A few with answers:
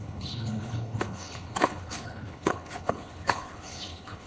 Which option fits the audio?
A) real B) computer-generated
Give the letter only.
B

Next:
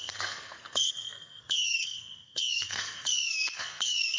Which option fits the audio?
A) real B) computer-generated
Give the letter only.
B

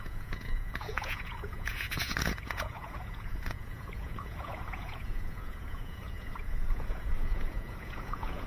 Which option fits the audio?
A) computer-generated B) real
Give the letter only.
A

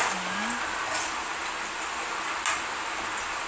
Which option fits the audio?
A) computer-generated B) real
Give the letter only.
B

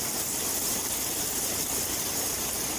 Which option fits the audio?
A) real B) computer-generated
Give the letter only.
A